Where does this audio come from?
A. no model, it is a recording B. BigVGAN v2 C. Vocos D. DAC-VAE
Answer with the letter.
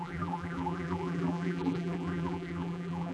B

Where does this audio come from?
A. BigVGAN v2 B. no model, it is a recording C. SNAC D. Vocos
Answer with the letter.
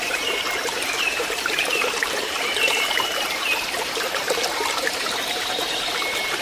A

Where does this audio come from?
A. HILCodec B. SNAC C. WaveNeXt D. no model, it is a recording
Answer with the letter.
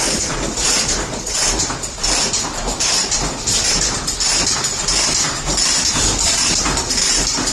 D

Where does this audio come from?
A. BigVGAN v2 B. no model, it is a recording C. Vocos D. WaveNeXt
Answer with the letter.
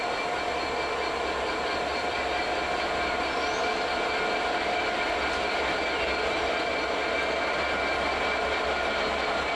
B